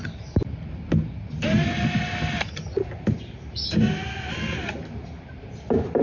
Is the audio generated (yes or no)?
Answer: no